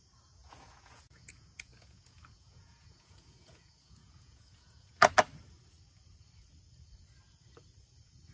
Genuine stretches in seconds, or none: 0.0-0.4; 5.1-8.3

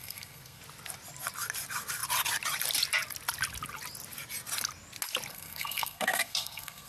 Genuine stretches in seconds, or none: 0.6-5.3

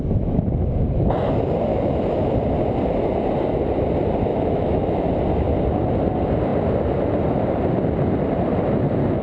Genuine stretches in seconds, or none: 0.0-1.7; 2.4-4.3; 5.1-9.2

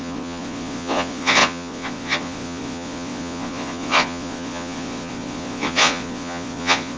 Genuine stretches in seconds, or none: none

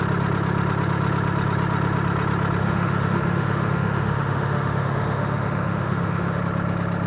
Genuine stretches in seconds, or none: 0.0-2.6; 6.4-7.1

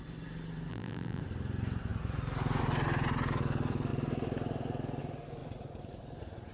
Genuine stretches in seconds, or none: 0.0-0.7; 1.2-6.5

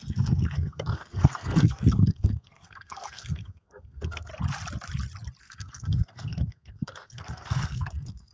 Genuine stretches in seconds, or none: 4.3-5.4